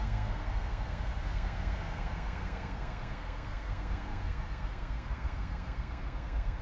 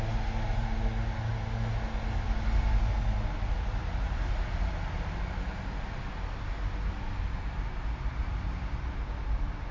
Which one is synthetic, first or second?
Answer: first